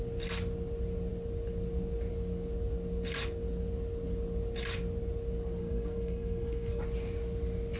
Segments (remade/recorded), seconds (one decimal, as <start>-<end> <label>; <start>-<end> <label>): 0.0-5.6 recorded; 5.6-6.8 remade; 6.8-7.8 recorded